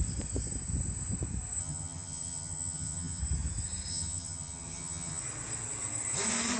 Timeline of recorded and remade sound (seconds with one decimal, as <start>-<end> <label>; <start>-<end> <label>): 0.0-1.6 recorded; 1.6-3.2 remade; 3.2-3.9 recorded; 3.9-5.2 remade; 5.2-6.6 recorded